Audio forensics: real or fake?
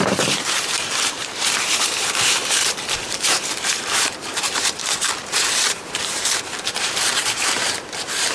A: fake